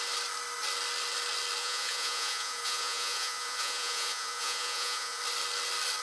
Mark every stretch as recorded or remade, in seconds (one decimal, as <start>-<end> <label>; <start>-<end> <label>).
0.0-1.6 recorded; 1.6-5.2 remade; 5.2-6.0 recorded